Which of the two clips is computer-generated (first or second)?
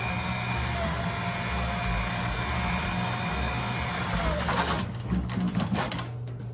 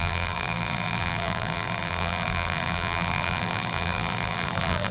second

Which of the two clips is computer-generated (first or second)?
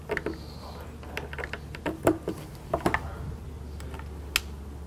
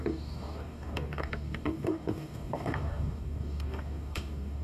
second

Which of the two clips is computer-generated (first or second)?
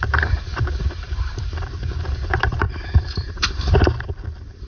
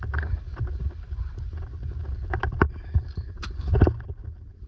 first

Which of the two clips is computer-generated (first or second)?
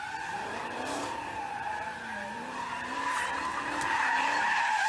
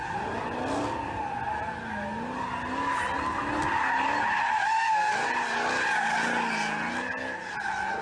first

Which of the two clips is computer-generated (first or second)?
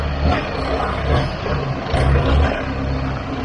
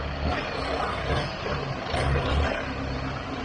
second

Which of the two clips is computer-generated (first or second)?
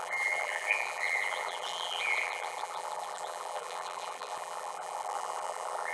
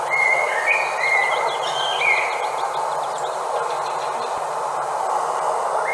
first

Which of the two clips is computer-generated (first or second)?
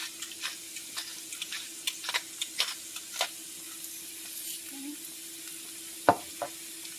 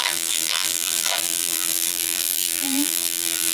second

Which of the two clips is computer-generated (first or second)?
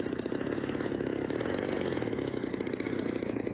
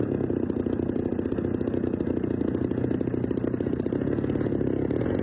first